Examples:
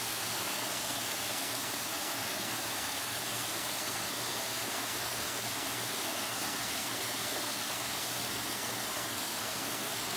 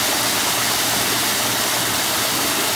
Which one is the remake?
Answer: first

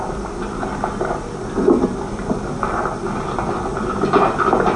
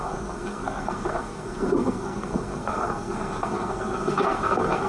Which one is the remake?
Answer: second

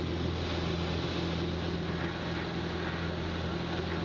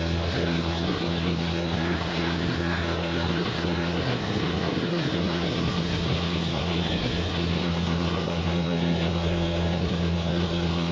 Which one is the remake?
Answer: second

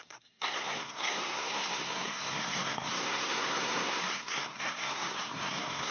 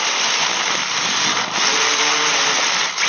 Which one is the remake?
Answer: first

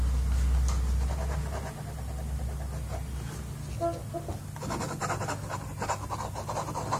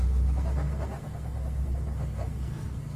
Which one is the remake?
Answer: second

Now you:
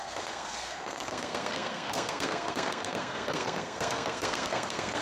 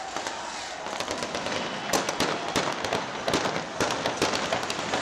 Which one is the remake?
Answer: first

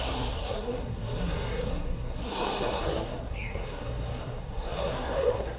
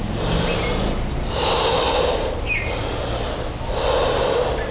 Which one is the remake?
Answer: first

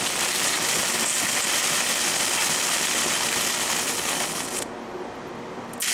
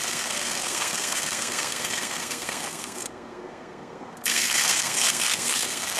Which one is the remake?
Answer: second